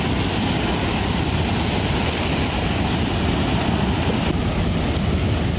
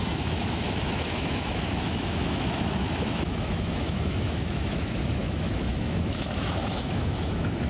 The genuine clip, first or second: first